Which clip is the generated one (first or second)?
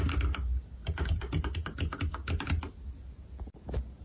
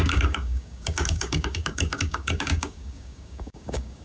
second